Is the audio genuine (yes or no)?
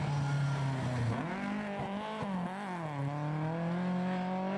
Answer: yes